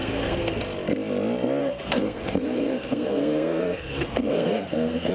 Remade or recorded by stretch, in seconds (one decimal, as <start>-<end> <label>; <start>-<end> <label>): 0.0-0.6 remade; 0.6-1.6 recorded; 1.6-5.1 remade